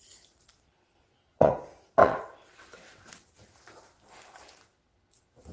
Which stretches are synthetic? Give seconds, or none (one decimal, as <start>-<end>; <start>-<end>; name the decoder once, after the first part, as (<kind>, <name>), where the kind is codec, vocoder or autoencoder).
0.8-1.5 (vocoder, WaveNeXt); 2.0-3.3